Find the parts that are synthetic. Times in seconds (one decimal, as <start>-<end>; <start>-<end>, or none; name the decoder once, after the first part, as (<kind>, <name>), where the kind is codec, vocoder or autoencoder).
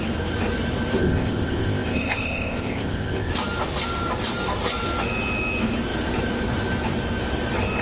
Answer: 1.0-3.3 (codec, ZipCodec)